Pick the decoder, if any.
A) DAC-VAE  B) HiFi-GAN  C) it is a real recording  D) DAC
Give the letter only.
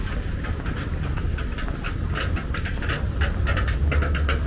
C